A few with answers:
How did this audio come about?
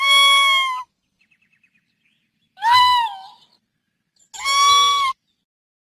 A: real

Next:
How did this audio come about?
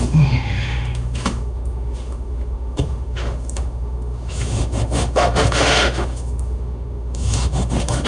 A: fake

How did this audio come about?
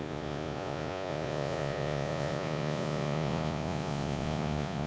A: fake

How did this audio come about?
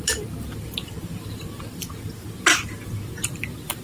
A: real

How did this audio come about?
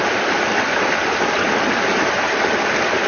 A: real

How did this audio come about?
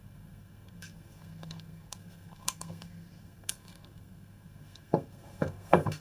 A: fake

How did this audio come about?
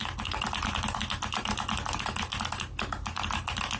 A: real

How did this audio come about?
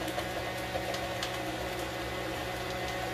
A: real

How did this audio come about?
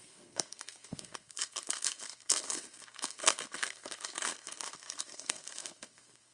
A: fake